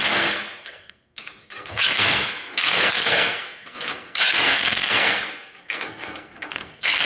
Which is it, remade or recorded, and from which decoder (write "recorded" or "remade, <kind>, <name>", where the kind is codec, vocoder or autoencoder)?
remade, codec, SNAC